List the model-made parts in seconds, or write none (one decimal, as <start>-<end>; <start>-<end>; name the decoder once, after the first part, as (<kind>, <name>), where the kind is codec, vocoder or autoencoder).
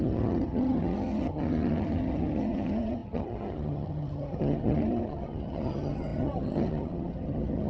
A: 0.0-7.7 (vocoder, HiFi-GAN)